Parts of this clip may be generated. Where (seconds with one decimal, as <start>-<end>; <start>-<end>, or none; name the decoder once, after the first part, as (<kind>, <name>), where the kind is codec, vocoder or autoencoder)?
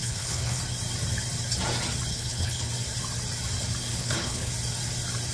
0.0-0.6 (codec, HILCodec); 2.1-2.7; 3.9-4.5